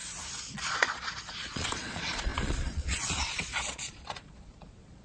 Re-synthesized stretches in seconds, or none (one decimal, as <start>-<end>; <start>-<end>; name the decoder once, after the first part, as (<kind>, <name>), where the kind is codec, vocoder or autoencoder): 0.7-5.0 (vocoder, Vocos)